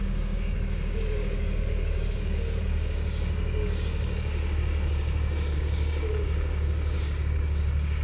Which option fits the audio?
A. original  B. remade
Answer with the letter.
B